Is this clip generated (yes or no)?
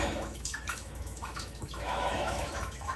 yes